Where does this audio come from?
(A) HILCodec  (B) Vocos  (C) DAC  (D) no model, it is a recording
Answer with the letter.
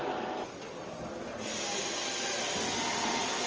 D